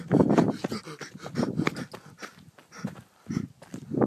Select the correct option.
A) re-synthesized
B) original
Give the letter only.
B